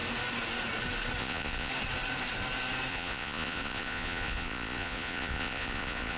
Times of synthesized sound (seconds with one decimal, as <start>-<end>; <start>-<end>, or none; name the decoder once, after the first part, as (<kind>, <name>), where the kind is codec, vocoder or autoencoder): 1.2-1.7 (vocoder, Vocos); 2.9-6.2